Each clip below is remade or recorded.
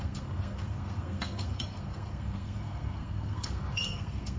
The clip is remade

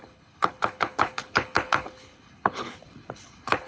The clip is remade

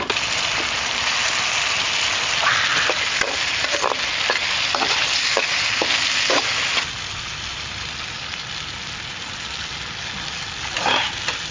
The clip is recorded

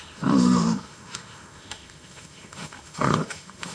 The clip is remade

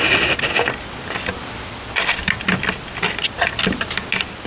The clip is recorded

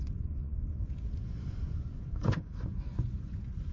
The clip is remade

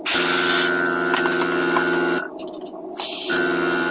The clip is recorded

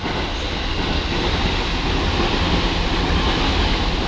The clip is recorded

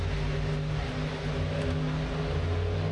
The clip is recorded